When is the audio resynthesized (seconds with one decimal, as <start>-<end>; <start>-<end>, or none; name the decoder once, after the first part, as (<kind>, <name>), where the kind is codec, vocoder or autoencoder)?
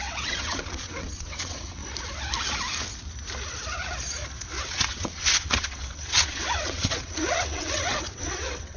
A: 0.0-1.8 (vocoder, WaveNeXt); 4.5-8.8